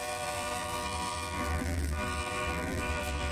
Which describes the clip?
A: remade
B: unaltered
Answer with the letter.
A